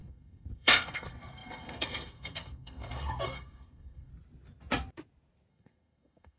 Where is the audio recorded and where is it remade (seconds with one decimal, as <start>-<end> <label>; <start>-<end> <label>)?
0.0-4.1 remade; 4.1-5.5 recorded; 5.5-6.4 remade